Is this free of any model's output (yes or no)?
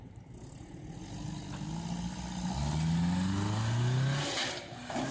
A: yes